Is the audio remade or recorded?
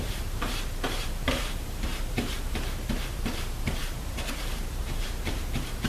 remade